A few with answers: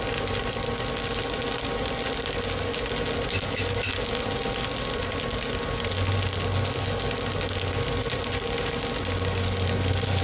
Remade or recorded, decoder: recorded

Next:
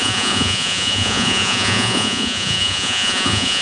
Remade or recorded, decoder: remade, vocoder, Vocos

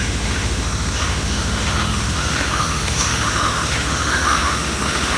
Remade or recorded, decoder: remade, autoencoder, DAC-VAE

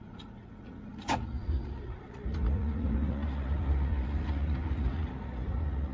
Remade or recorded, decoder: remade, vocoder, Vocos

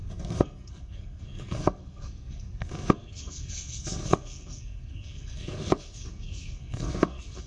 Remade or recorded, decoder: remade, codec, SNAC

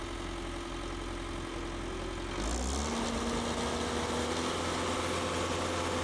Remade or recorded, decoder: recorded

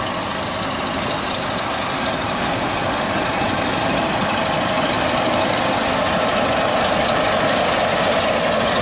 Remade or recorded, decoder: recorded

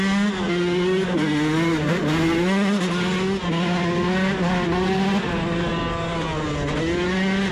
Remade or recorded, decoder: recorded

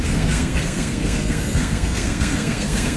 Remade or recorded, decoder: remade, codec, SNAC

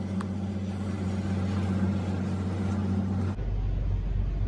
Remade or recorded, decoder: recorded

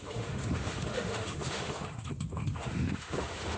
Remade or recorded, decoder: remade, autoencoder, DAC-VAE